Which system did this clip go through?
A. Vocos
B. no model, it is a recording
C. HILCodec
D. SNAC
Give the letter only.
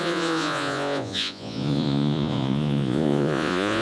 A